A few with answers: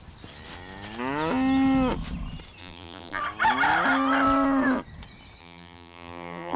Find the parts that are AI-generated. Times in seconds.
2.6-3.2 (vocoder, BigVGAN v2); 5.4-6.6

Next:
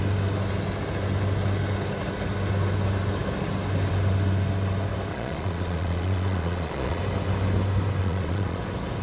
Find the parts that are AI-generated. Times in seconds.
5.1-7.0 (vocoder, Vocos); 8.0-8.6

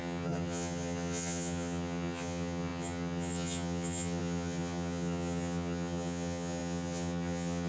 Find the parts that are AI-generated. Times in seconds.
0.0-7.7 (vocoder, HiFi-GAN)

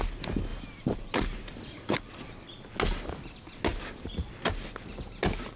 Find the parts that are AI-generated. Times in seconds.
0.5-1.9 (vocoder, BigVGAN v2); 3.7-4.9

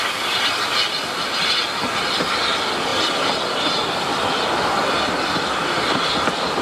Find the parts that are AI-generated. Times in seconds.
none

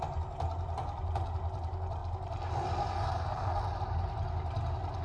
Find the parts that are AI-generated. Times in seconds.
none

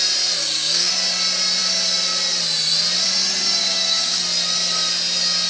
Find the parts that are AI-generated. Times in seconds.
0.4-0.9 (codec, DAC); 3.6-4.2

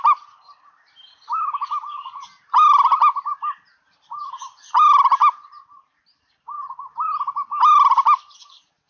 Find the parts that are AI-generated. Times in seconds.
none